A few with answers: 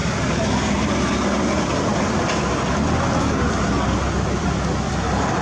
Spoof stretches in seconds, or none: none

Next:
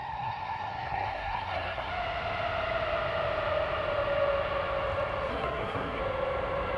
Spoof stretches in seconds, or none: 0.0-1.9 (codec, SNAC); 5.3-6.0

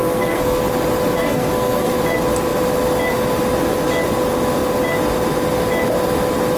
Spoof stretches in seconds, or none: 0.0-0.6 (codec, SNAC); 1.2-1.9

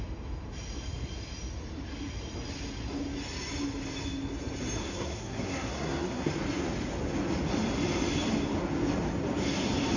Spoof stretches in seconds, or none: 4.8-6.3 (codec, SNAC)

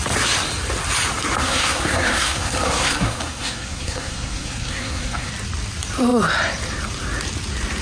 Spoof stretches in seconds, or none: 1.4-5.3 (codec, SNAC)

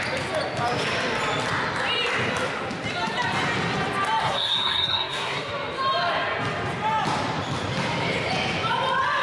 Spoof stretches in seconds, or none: 4.2-5.5 (codec, SNAC)